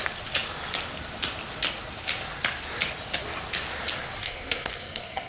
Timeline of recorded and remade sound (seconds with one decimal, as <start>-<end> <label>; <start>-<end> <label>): 0.0-4.2 recorded; 4.2-5.3 remade